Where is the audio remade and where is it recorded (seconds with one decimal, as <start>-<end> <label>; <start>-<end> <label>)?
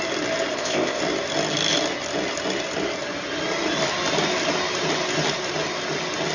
0.0-0.5 recorded; 0.5-1.0 remade; 1.0-6.3 recorded